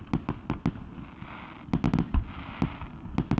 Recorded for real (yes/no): yes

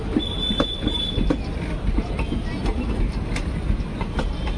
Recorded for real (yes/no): yes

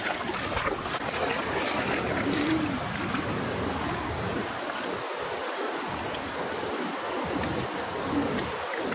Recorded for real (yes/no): yes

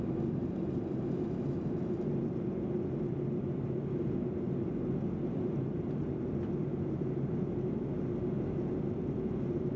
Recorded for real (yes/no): yes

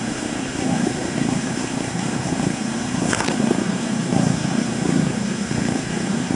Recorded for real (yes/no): no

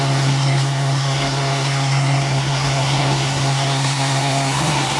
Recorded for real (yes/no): no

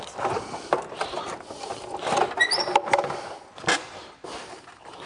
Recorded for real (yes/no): yes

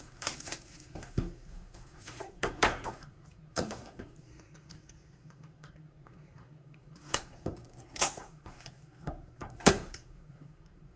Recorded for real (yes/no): no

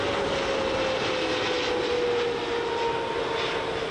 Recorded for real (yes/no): yes